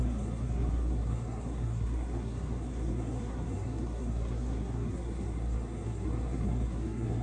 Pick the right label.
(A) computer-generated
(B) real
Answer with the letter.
A